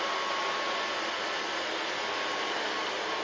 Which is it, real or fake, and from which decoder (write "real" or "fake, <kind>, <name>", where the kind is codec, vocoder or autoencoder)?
real